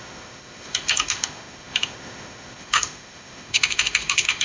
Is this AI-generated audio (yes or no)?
yes